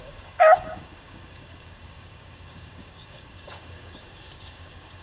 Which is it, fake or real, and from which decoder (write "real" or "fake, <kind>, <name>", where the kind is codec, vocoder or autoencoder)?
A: fake, codec, DAC